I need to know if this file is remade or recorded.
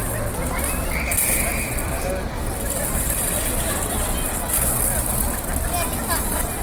recorded